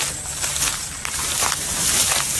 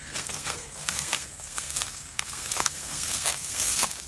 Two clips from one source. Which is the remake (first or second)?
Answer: second